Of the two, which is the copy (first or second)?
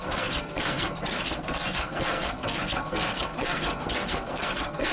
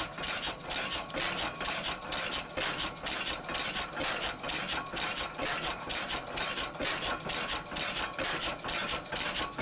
first